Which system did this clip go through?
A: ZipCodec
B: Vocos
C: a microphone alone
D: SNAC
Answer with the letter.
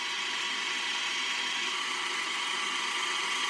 C